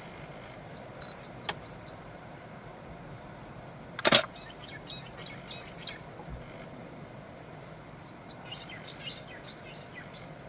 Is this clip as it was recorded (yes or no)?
yes